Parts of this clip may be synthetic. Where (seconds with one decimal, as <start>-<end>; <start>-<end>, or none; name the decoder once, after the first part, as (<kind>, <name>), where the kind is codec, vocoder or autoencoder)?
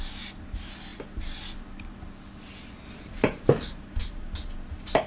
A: none